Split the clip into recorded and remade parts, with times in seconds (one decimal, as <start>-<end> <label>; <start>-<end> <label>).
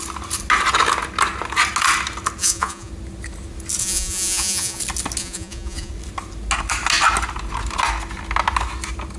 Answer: 0.0-2.4 recorded; 2.4-2.9 remade; 2.9-3.8 recorded; 3.8-4.8 remade; 4.8-5.2 recorded; 5.2-5.9 remade; 5.9-9.2 recorded